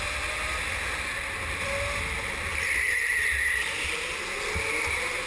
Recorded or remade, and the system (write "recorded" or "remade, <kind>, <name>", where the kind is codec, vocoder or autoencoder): recorded